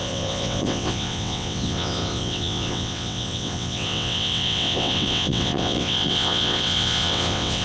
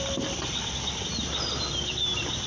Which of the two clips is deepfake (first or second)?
first